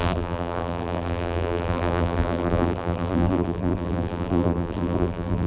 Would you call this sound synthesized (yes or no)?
yes